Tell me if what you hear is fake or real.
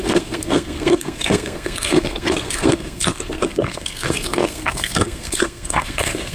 fake